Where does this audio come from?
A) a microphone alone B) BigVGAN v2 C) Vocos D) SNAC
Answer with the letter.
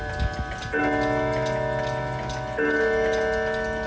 A